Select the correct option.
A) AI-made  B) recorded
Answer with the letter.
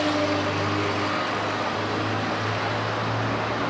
B